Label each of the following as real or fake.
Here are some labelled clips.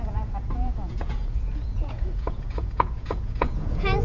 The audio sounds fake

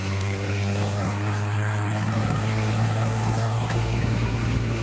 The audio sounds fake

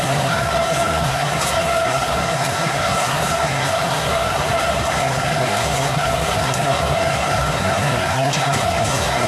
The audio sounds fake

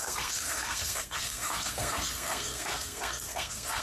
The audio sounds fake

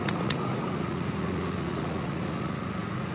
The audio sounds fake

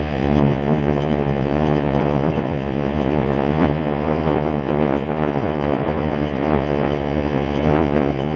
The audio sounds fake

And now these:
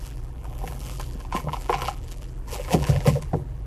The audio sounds fake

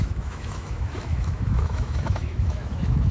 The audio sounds fake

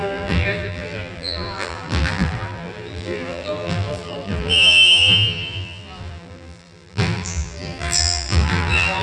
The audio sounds fake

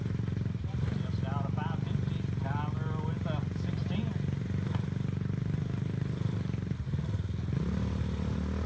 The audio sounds real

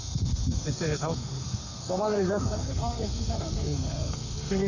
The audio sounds fake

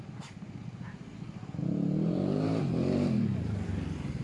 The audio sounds real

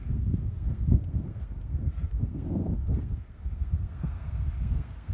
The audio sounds fake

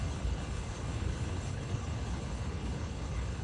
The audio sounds fake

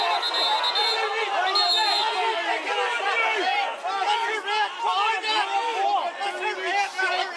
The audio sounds real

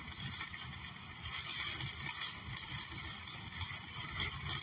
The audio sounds real